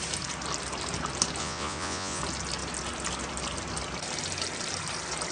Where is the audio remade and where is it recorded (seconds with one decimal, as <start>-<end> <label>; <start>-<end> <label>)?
0.0-1.4 recorded; 1.4-2.2 remade; 2.2-5.3 recorded